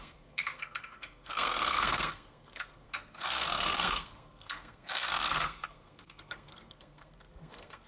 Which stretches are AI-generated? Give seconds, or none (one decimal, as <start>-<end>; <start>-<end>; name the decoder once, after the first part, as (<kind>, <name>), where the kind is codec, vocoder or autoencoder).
0.0-7.9 (codec, SNAC)